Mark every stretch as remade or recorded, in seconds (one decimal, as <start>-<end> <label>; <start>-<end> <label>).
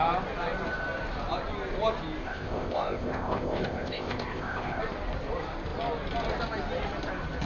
0.0-2.2 recorded; 2.2-4.8 remade; 4.8-7.5 recorded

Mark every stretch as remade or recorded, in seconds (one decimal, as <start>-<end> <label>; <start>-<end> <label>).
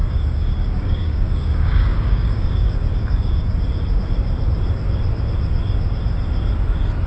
0.0-3.5 remade; 3.5-7.1 recorded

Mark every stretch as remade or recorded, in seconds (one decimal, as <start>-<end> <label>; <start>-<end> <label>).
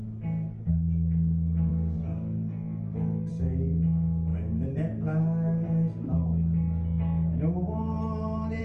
0.0-1.7 recorded; 1.7-3.3 remade; 3.3-8.6 recorded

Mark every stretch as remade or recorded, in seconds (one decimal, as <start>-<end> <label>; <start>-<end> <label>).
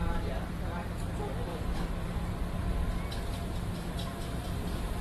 0.0-1.5 recorded; 1.5-2.3 remade; 2.3-5.0 recorded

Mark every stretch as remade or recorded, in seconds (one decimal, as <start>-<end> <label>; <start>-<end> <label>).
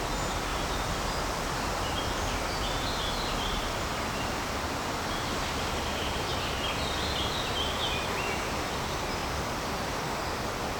0.0-0.5 recorded; 0.5-5.4 remade; 5.4-6.3 recorded; 6.3-7.2 remade; 7.2-9.2 recorded; 9.2-10.0 remade; 10.0-10.8 recorded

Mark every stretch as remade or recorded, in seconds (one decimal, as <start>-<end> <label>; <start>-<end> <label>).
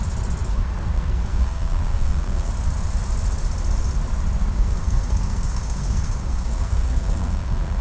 0.0-0.5 recorded; 0.5-2.5 remade; 2.5-4.4 recorded; 4.4-7.8 remade